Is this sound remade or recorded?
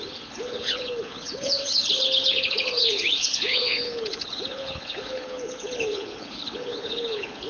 remade